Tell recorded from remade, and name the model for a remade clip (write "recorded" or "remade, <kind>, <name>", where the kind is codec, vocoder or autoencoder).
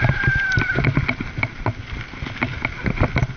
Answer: recorded